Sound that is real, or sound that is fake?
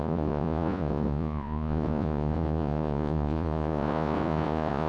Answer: fake